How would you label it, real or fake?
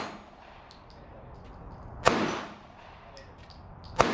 real